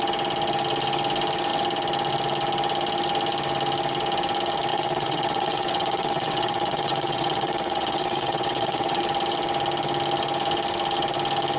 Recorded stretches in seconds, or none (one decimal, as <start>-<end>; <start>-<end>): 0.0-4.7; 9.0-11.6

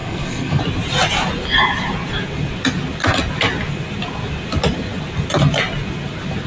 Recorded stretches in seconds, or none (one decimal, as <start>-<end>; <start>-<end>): 0.6-6.5

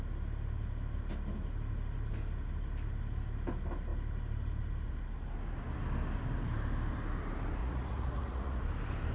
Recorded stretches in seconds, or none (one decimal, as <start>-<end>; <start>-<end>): 0.0-7.6; 8.6-9.1